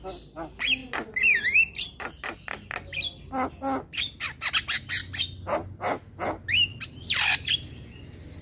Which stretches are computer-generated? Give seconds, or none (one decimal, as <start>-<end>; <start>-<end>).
none